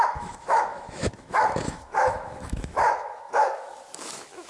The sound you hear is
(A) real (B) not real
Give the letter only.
B